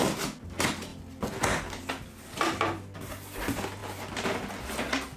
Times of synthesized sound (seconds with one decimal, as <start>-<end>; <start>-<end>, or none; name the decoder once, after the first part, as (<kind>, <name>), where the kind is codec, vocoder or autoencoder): none